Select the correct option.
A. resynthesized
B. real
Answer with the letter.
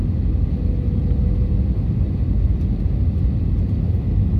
B